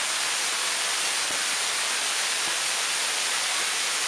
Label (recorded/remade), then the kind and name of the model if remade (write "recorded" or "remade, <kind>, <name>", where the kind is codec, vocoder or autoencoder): recorded